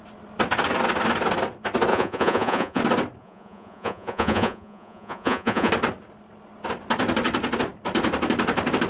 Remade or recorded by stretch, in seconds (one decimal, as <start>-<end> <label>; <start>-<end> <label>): 0.0-1.9 recorded; 1.9-2.8 remade; 2.8-3.2 recorded; 3.2-5.7 remade; 5.7-8.9 recorded